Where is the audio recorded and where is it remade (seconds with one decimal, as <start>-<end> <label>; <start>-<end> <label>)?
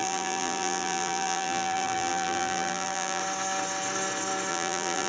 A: 0.0-3.2 remade; 3.2-4.5 recorded; 4.5-5.1 remade